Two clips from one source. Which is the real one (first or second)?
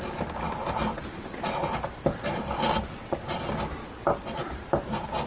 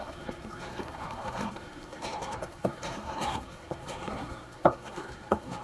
first